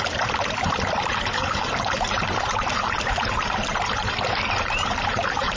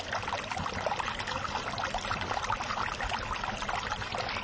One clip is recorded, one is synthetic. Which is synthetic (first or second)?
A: first